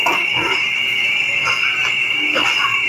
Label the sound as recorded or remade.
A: remade